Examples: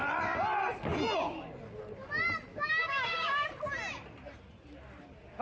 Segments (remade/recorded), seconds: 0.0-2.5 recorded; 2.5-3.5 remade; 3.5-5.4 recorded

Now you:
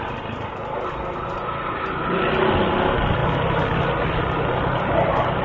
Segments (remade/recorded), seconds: 0.0-5.4 recorded

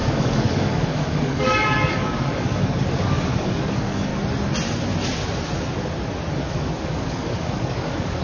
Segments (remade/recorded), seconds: 0.0-4.1 remade; 4.1-6.3 recorded; 6.3-8.2 remade